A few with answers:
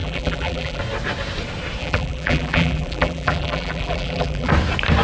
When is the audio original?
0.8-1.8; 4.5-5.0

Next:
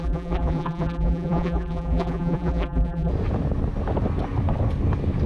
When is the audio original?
3.1-5.3